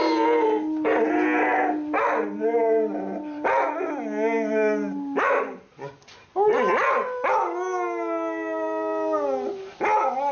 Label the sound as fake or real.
real